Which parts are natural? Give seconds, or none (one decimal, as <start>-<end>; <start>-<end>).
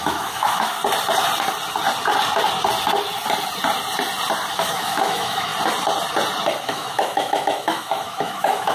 0.8-4.5; 5.5-6.6